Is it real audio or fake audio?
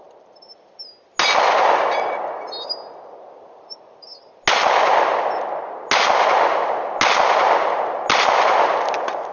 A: real